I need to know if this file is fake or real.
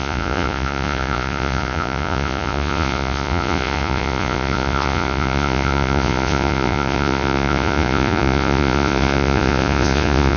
fake